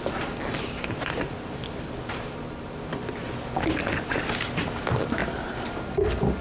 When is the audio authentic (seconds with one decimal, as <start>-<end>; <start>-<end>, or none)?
0.0-6.4